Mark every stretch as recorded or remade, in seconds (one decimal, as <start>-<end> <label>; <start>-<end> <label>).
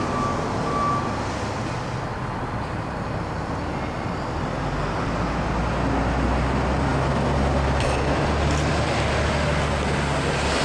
0.0-10.6 recorded